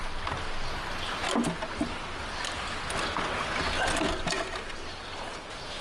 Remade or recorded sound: recorded